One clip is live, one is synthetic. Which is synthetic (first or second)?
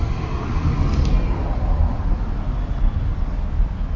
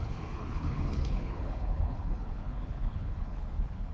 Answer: second